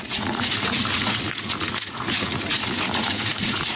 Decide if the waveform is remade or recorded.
remade